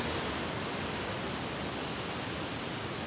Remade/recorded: recorded